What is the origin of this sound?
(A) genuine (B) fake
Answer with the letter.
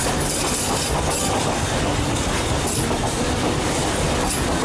A